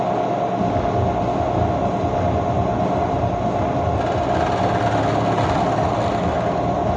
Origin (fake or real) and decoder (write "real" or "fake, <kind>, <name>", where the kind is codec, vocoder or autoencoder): real